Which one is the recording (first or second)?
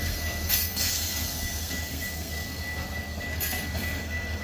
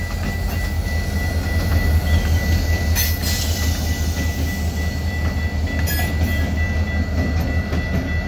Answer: second